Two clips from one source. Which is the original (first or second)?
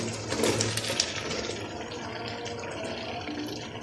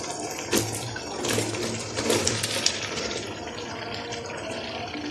first